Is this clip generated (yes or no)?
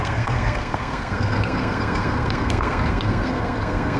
yes